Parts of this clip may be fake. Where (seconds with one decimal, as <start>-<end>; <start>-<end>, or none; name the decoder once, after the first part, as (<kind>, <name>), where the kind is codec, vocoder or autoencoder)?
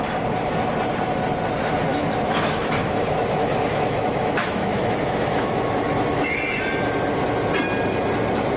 1.9-5.7 (autoencoder, DAC-VAE)